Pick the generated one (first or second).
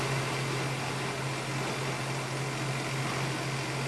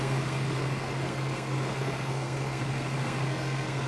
second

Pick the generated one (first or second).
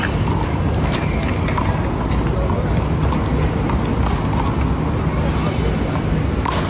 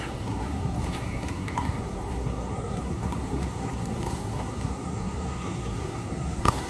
second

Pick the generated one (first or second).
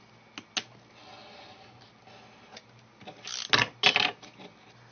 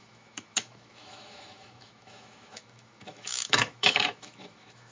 second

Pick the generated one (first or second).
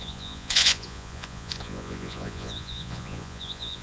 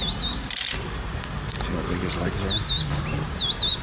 first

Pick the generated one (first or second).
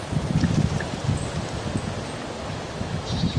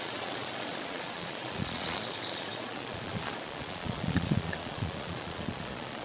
second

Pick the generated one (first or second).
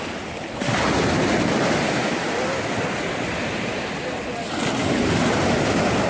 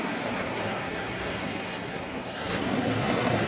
second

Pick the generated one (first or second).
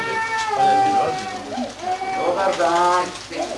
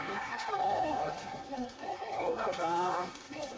second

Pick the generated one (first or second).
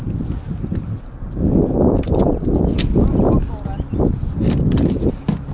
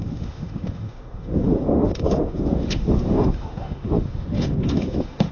second